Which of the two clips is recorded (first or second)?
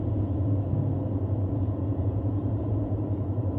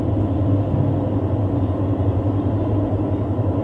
second